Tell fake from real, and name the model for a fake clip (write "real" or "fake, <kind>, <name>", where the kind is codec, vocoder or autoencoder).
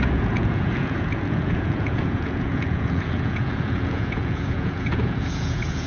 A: fake, vocoder, Vocos